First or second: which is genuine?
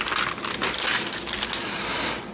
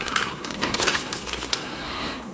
first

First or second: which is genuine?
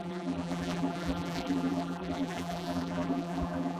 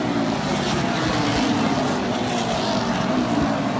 second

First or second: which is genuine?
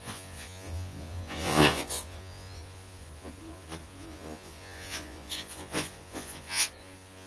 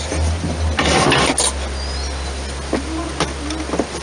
second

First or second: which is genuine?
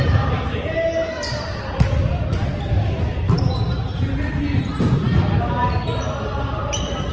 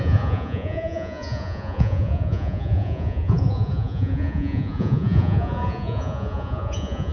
first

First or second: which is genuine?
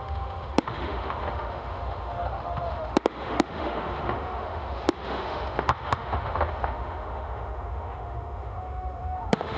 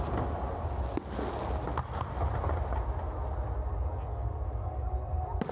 second